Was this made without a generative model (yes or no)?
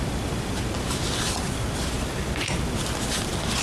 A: yes